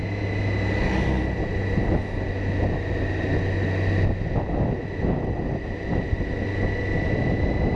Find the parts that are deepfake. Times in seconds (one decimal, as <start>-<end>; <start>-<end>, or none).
none